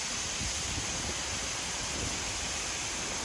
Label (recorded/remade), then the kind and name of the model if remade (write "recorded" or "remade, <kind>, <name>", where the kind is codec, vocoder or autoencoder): recorded